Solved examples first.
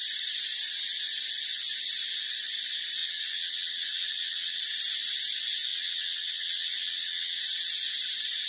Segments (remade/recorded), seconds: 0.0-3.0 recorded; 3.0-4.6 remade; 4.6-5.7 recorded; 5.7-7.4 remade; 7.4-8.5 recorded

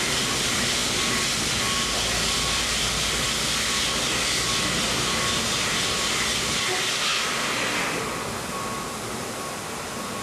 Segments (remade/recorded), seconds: 0.0-10.2 recorded

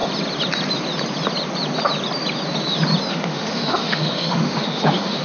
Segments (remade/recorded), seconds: 0.0-3.1 recorded; 3.1-5.2 remade

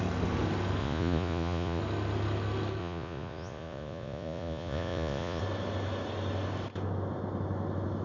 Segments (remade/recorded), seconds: 0.0-0.8 recorded; 0.8-1.8 remade; 1.8-2.8 recorded; 2.8-5.4 remade; 5.4-8.0 recorded

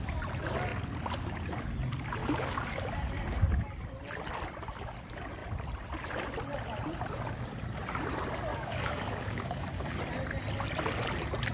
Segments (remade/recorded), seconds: 0.0-2.2 recorded; 2.2-2.8 remade; 2.8-8.5 recorded; 8.5-10.0 remade; 10.0-11.5 recorded

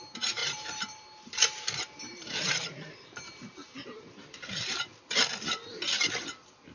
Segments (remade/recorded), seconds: 0.0-4.9 remade; 4.9-6.7 recorded

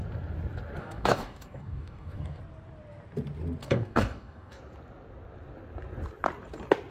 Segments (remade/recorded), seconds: 0.0-0.8 recorded; 0.8-2.4 remade; 2.4-3.6 recorded; 3.6-4.6 remade; 4.6-6.9 recorded

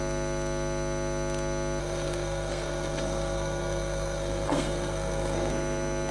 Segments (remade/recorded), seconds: 0.0-1.8 recorded; 1.8-5.5 remade; 5.5-6.1 recorded